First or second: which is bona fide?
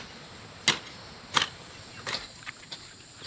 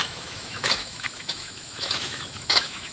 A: first